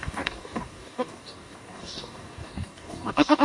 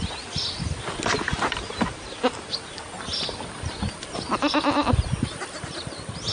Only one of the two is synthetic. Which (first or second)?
first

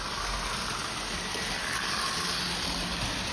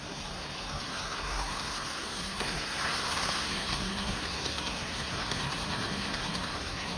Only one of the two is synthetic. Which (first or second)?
second